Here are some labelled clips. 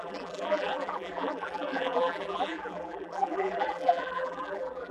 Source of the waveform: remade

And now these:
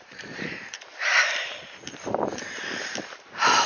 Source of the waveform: remade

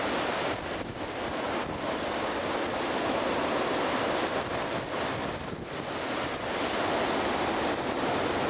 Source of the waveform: recorded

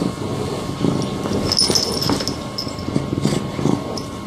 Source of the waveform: recorded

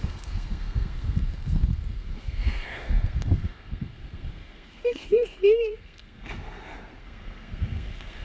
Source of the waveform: remade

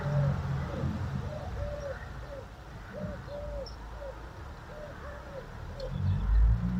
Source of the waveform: recorded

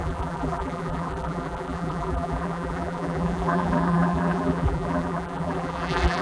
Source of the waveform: remade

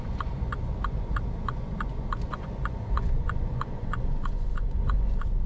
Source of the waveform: remade